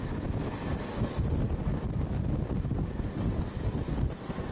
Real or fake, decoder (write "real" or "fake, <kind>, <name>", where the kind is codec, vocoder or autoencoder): real